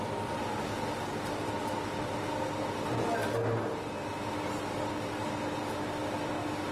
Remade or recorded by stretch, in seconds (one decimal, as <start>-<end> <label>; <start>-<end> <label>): 0.0-6.7 recorded